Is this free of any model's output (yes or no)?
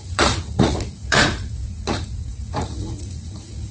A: no